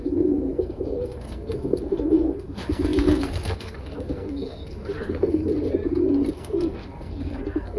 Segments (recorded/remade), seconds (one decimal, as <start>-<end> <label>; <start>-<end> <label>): 0.0-5.5 remade; 5.5-6.3 recorded; 6.3-7.8 remade